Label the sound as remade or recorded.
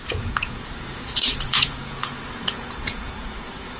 remade